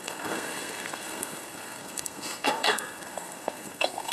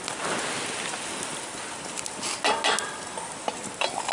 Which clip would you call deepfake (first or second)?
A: first